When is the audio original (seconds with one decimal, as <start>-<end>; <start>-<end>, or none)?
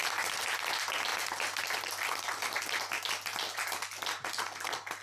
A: 0.0-5.0